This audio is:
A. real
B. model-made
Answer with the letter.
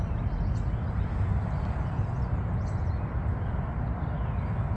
A